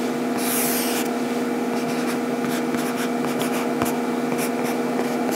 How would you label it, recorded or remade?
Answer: recorded